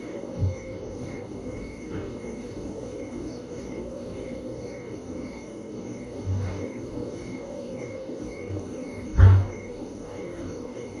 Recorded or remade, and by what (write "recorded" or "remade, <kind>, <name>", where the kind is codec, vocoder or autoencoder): remade, codec, DAC